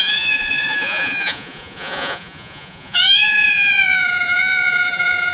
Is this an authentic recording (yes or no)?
no